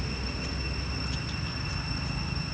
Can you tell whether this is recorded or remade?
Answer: recorded